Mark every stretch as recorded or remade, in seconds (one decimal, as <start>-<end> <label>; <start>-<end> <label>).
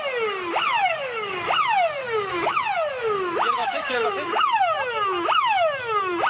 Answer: 0.0-0.8 recorded; 0.8-1.5 remade; 1.5-2.0 recorded; 2.0-2.6 remade; 2.6-3.6 recorded; 3.6-4.4 remade; 4.4-6.3 recorded